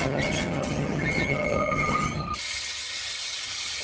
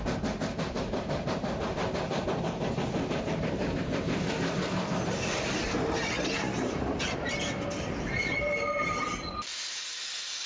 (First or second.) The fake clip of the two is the first